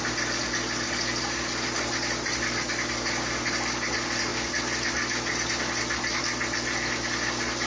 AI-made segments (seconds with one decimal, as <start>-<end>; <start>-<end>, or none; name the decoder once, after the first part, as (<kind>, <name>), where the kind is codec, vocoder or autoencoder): none